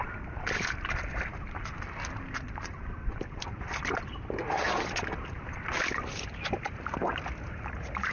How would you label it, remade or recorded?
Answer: remade